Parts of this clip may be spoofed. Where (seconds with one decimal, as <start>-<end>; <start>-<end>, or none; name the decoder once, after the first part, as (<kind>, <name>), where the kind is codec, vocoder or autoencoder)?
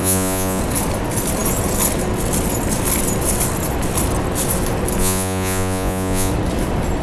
0.0-0.6 (vocoder, Vocos); 5.0-6.3